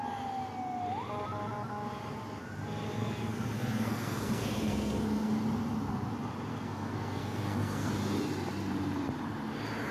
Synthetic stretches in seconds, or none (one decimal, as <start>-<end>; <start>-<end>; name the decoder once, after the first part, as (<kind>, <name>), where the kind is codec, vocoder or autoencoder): 3.0-5.3 (codec, SNAC); 6.5-7.9